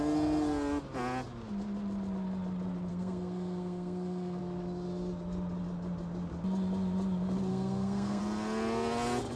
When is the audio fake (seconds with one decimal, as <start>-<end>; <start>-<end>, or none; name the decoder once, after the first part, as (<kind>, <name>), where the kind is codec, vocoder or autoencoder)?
2.9-4.4 (codec, SNAC); 7.5-8.2